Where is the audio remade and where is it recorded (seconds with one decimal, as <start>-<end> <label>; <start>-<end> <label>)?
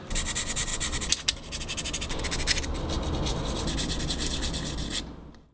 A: 0.0-5.5 recorded